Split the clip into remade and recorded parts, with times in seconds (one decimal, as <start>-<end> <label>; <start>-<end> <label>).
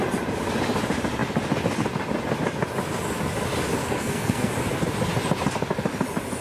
0.0-3.8 recorded; 3.8-4.5 remade; 4.5-6.4 recorded